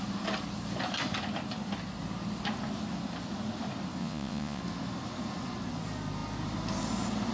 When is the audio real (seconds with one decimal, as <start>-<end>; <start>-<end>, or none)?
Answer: 0.0-4.0; 4.6-7.3